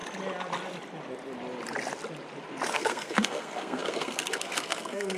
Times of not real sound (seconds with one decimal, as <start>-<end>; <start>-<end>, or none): 2.7-5.2